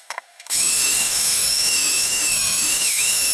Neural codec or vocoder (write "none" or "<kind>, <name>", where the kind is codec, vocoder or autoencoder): autoencoder, DAC-VAE